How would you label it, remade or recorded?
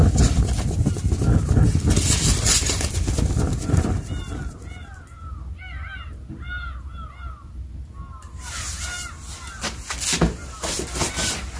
recorded